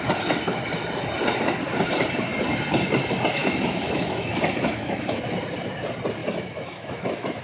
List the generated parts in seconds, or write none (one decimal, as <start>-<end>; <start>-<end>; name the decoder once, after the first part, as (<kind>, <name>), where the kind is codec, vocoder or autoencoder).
3.4-5.2 (autoencoder, DAC-VAE); 6.2-7.4